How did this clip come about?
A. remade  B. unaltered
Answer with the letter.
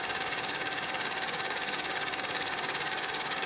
A